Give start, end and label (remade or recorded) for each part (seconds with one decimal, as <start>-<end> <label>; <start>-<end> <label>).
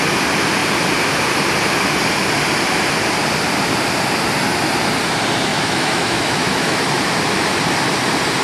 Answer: 0.0-5.5 recorded; 5.5-7.0 remade; 7.0-8.4 recorded